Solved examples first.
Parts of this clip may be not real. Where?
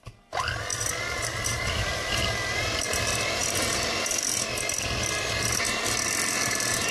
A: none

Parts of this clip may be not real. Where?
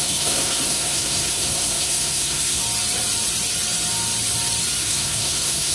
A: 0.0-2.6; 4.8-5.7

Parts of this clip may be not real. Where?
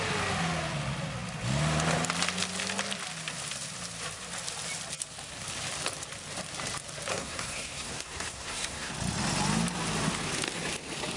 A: 7.1-8.9